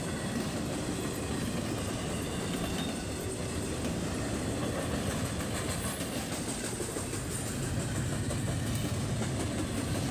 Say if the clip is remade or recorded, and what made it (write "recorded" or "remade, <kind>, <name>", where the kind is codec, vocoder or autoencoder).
recorded